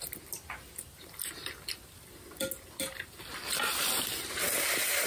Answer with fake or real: real